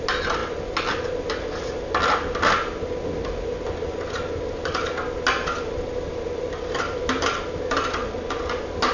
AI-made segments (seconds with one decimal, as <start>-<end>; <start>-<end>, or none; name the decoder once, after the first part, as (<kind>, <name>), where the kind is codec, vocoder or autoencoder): none